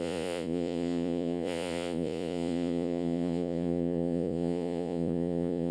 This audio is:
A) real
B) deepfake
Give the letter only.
B